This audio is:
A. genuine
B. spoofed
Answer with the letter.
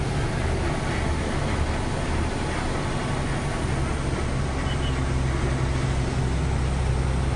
A